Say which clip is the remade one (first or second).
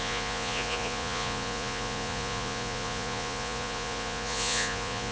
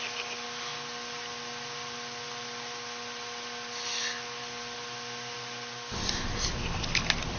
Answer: first